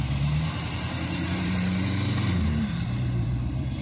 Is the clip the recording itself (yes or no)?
no